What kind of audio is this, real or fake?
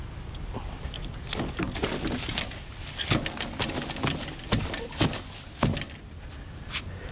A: real